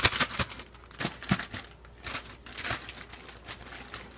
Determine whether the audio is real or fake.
real